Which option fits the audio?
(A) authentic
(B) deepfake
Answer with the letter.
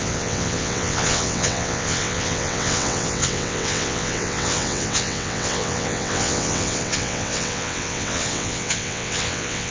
B